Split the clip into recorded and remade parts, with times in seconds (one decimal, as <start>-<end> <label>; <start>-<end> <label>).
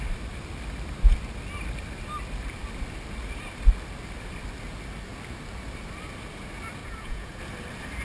0.0-6.8 recorded; 6.8-7.4 remade; 7.4-8.0 recorded